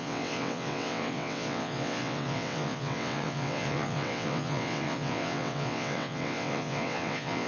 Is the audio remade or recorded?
remade